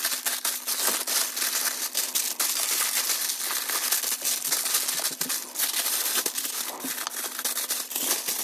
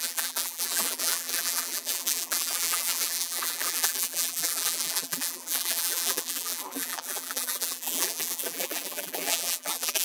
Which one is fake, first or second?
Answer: second